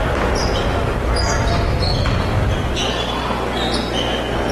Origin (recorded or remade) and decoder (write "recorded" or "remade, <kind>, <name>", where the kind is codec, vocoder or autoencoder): recorded